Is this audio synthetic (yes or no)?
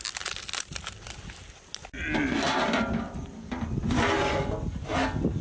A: no